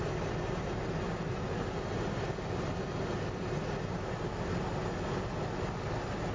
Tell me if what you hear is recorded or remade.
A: recorded